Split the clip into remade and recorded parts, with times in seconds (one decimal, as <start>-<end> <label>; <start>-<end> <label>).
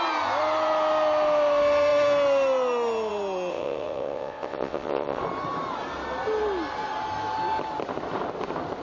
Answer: 0.0-3.5 recorded; 3.5-5.2 remade; 5.2-8.8 recorded